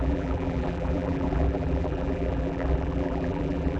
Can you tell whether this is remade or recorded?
remade